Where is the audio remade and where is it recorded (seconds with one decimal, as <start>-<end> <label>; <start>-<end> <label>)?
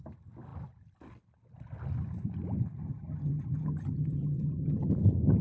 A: 0.0-2.8 recorded; 2.8-4.9 remade; 4.9-5.4 recorded